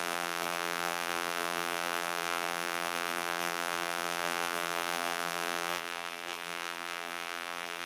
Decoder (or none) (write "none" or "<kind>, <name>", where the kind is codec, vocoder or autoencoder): vocoder, BigVGAN v2